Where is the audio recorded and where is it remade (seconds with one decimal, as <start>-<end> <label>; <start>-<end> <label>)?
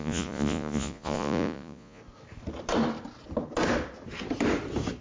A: 0.0-2.0 remade; 2.0-5.0 recorded